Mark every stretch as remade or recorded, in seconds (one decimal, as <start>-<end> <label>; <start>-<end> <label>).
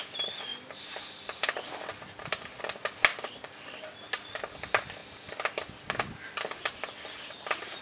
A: 0.0-0.5 recorded; 0.5-2.6 remade; 2.6-3.1 recorded; 3.1-4.4 remade; 4.4-7.8 recorded